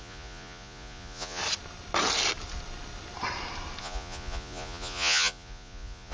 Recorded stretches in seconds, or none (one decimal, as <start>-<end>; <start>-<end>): 1.4-3.8